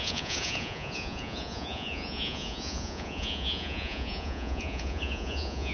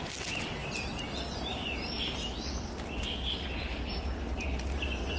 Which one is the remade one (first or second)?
first